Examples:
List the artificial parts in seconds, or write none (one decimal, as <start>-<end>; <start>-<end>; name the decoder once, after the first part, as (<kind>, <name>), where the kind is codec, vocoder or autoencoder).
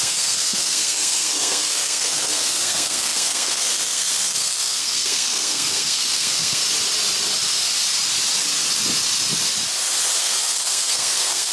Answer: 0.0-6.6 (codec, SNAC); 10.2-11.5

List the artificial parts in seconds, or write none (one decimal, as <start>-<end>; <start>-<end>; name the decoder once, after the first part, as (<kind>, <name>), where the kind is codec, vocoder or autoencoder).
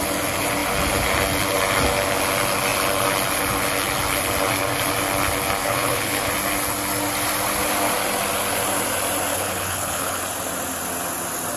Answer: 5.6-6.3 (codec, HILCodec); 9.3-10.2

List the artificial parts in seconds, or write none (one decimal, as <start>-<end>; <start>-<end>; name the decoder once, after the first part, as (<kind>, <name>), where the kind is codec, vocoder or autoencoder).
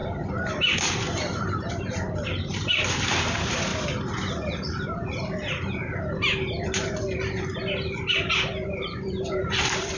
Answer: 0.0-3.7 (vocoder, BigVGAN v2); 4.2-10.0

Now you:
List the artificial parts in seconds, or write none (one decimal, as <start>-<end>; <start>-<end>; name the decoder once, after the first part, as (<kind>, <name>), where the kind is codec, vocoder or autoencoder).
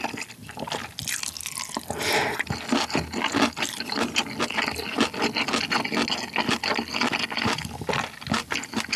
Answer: none